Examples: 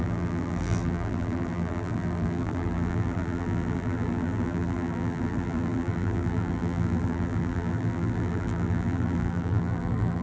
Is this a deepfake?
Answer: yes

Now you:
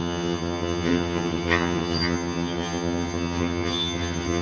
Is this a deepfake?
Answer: yes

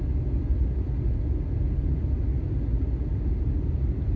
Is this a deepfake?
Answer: no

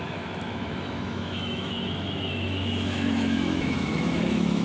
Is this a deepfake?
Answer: yes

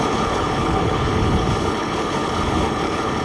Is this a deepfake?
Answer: yes